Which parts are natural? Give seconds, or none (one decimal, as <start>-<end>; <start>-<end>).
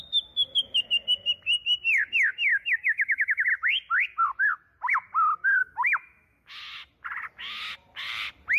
0.0-2.5; 3.5-5.6; 6.5-8.6